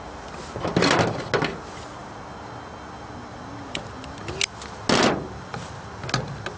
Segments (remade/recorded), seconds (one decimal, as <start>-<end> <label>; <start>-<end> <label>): 0.0-6.6 recorded